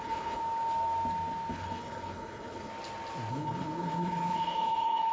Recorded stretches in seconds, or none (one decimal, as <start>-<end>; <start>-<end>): 0.4-1.5; 2.7-3.3